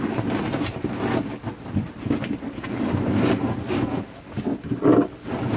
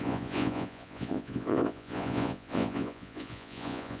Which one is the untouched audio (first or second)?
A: first